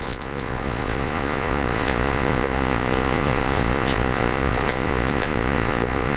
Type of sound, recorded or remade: remade